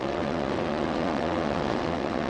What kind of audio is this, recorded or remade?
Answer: remade